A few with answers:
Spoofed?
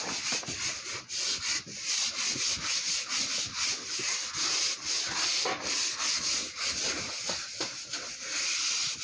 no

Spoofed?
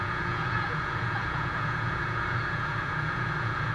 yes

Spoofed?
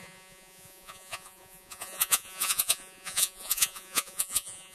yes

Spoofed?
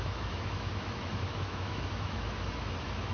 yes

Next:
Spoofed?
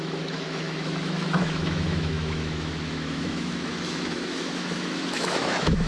yes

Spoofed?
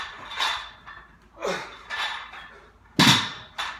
no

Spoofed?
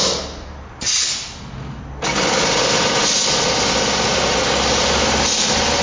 no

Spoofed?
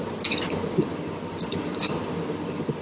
no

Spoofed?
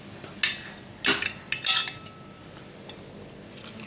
no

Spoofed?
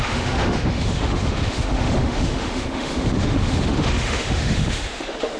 yes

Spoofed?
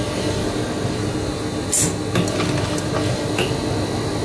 no